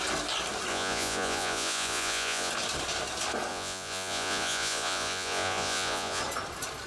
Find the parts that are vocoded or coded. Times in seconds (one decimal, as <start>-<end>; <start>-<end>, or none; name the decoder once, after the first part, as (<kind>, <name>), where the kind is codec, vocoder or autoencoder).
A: 0.7-2.5 (vocoder, Vocos); 3.5-6.2